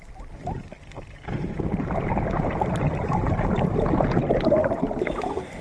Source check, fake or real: real